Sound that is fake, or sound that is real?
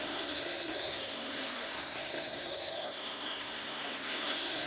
fake